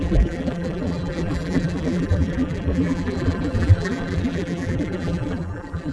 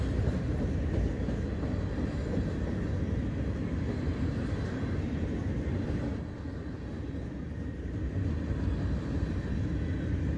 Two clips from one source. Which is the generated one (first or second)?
first